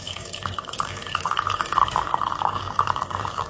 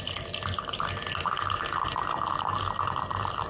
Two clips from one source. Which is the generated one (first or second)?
first